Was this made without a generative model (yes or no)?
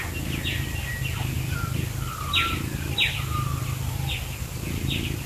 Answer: yes